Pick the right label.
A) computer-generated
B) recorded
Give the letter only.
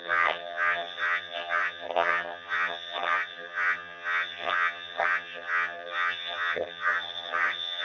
A